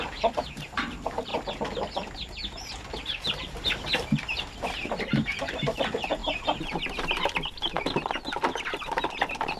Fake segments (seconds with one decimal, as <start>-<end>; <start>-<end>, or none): 0.0-1.3; 5.0-9.6

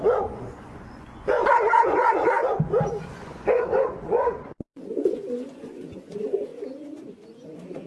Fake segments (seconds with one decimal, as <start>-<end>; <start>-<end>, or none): 0.0-2.4; 3.1-7.9

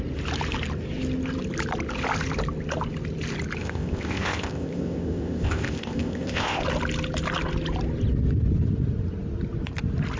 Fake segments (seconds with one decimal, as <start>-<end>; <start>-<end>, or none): 3.6-6.6

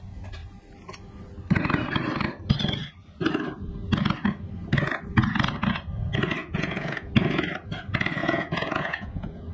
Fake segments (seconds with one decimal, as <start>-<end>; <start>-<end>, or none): 6.4-7.1; 8.2-9.5

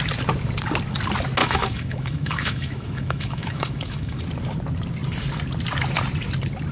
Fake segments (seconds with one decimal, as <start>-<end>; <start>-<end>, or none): 1.4-4.2

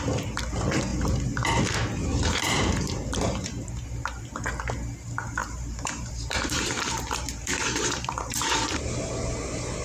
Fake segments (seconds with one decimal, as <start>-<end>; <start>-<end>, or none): 0.9-1.6; 2.1-4.2; 5.4-9.3